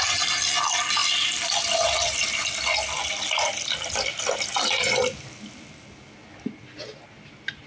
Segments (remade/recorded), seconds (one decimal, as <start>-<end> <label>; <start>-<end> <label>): 0.0-7.7 recorded